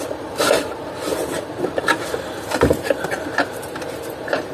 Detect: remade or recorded remade